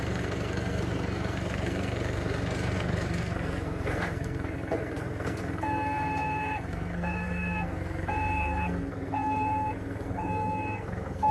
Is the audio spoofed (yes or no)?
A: yes